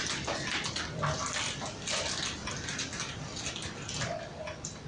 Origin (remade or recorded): recorded